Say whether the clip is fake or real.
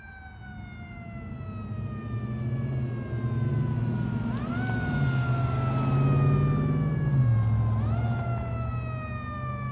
real